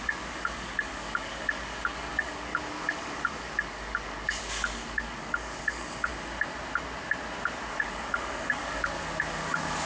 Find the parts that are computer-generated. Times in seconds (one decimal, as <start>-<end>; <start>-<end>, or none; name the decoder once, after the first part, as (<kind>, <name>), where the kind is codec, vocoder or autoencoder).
0.0-6.1 (codec, DAC); 7.7-9.9